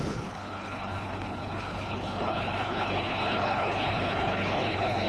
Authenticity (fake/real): fake